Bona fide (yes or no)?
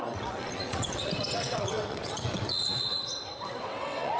no